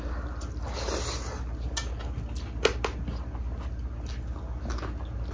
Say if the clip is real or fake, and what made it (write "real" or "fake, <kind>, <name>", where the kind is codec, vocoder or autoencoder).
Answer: real